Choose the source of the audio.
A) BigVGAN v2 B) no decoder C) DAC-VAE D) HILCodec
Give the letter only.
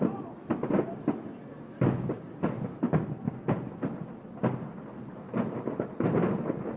B